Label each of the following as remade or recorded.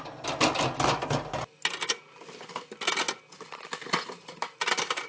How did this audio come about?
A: recorded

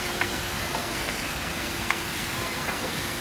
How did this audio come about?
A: remade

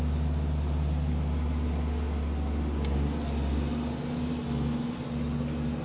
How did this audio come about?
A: recorded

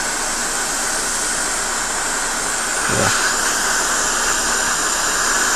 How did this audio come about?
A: recorded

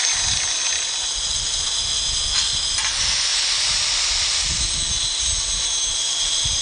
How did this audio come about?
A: recorded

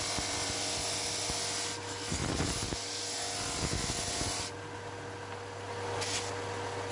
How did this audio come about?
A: recorded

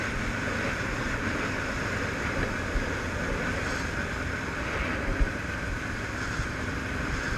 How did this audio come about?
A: recorded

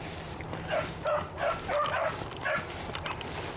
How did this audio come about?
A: recorded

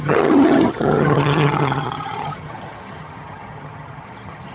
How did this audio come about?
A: remade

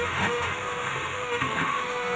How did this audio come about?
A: remade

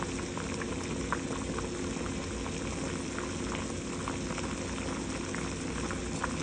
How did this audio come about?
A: recorded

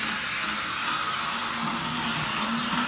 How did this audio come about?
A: recorded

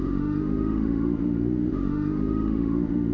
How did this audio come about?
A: remade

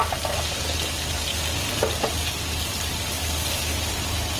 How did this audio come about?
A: recorded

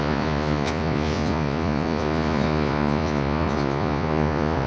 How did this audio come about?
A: remade